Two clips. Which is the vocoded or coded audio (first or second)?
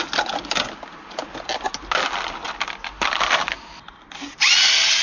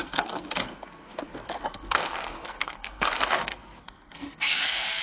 second